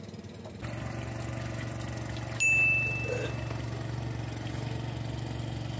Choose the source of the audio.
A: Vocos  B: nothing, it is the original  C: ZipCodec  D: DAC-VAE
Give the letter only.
B